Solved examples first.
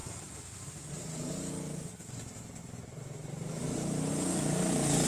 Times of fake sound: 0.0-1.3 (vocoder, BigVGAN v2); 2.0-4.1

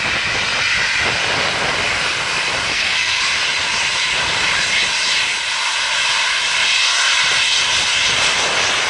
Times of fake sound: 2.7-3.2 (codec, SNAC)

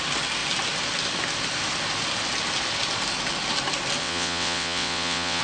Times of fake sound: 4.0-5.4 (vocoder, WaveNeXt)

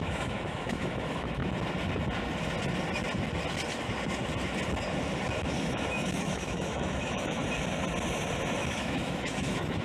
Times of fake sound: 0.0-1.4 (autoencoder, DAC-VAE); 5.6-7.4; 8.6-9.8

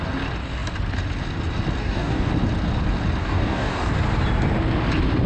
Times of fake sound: 1.8-2.3 (codec, DAC); 3.2-3.9

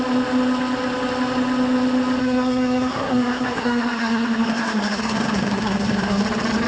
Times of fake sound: 2.2-6.2 (codec, SNAC)

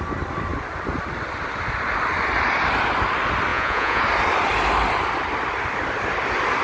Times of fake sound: 3.5-4.0 (vocoder, Vocos)

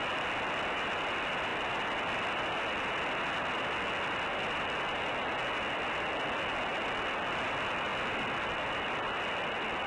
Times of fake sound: none